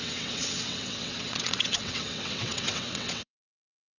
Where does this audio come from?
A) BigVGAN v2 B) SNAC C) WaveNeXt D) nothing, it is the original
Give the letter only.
C